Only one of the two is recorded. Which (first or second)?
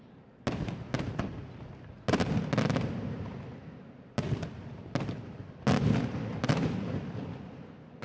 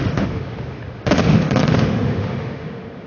first